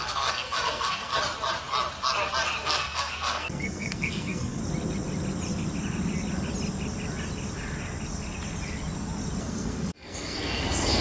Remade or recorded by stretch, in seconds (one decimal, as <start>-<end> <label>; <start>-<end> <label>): 0.0-1.1 remade; 1.1-2.6 recorded; 2.6-4.6 remade; 4.6-9.4 recorded; 9.4-11.0 remade